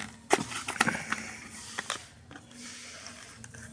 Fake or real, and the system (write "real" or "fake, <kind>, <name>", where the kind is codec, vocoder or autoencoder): real